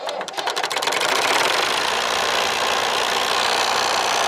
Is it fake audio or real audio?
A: real